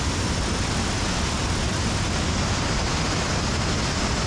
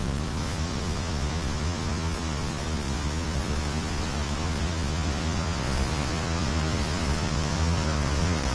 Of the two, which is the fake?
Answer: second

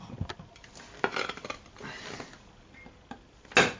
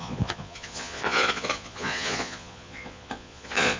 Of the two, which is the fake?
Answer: second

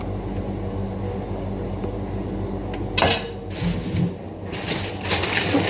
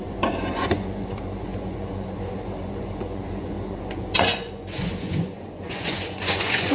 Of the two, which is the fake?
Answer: second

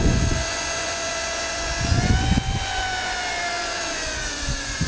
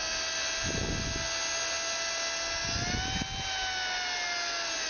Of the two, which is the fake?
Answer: first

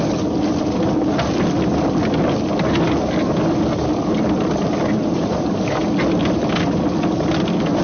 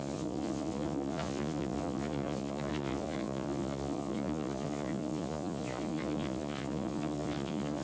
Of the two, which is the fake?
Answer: second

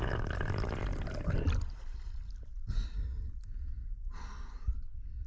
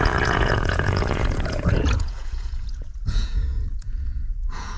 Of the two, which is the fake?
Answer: second